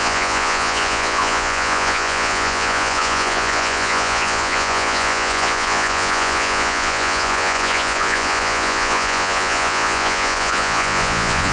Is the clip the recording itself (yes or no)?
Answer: no